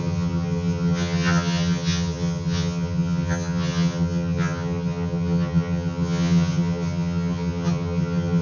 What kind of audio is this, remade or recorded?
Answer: remade